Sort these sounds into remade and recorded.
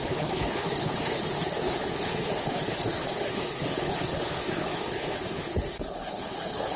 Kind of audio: remade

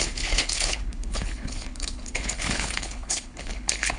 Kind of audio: remade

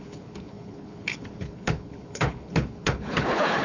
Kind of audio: remade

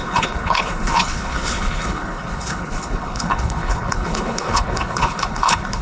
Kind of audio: remade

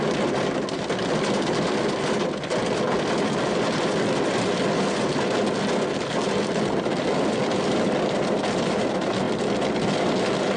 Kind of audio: recorded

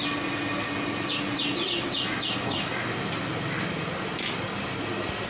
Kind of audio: recorded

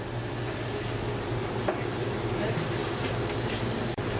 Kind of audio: recorded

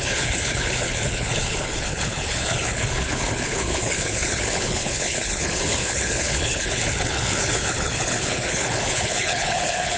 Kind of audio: remade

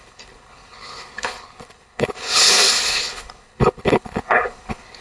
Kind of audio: remade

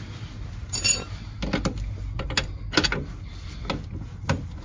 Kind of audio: recorded